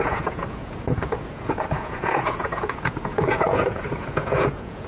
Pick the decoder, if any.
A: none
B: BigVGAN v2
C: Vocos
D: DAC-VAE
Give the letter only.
C